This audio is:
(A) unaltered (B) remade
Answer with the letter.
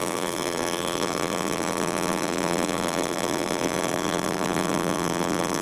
B